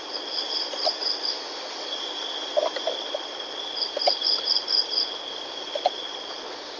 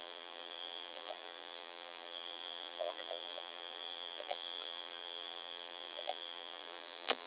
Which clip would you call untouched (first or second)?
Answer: first